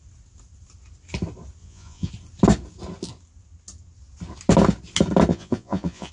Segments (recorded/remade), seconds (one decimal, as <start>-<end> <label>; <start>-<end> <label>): 0.0-1.6 recorded; 1.6-2.1 remade; 2.1-5.3 recorded; 5.3-6.1 remade